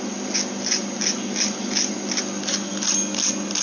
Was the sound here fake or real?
real